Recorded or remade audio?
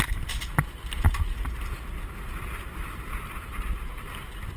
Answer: recorded